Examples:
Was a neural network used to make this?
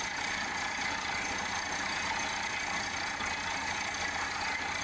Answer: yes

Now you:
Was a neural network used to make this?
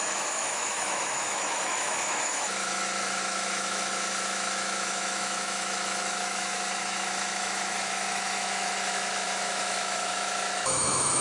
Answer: yes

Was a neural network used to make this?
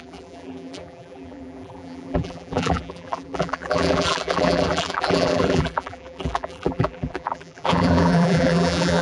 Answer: yes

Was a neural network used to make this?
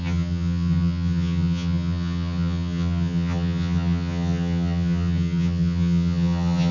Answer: yes